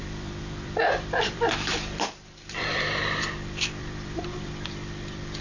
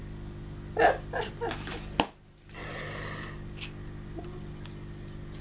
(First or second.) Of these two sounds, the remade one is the first